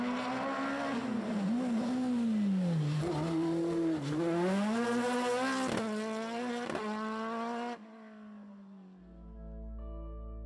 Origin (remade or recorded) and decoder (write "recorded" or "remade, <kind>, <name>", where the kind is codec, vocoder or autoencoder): recorded